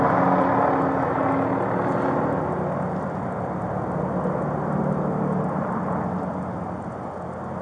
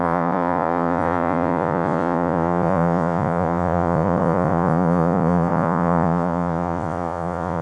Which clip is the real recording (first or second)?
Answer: first